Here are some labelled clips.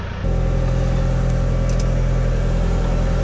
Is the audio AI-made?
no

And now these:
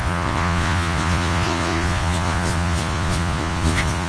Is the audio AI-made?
yes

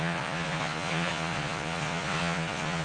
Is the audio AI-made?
yes